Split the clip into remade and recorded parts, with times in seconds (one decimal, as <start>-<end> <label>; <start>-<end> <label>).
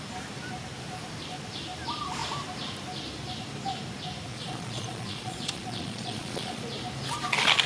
0.0-4.3 recorded; 4.3-6.6 remade; 6.6-7.7 recorded